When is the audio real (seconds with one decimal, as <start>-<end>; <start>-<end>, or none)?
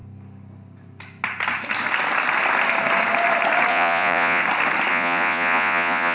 0.0-3.7; 4.4-4.9